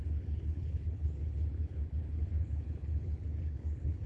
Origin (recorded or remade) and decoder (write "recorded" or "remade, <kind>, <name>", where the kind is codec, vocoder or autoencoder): remade, codec, HILCodec